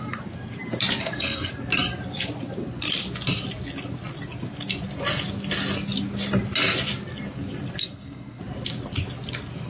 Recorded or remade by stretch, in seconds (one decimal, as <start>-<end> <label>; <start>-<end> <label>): 0.0-1.0 recorded; 1.0-1.5 remade; 1.5-7.8 recorded; 7.8-8.4 remade; 8.4-9.7 recorded